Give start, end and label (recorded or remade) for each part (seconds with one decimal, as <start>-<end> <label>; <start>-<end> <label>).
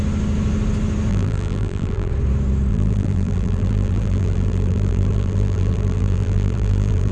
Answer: 0.0-1.1 recorded; 1.1-2.1 remade; 2.1-2.7 recorded; 2.7-7.1 remade